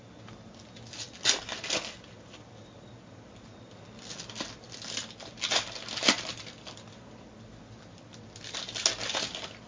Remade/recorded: recorded